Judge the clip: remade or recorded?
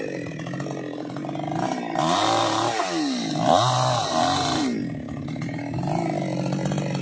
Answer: recorded